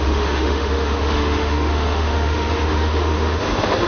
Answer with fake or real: fake